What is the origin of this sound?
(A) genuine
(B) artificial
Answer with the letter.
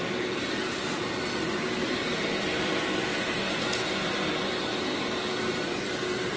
A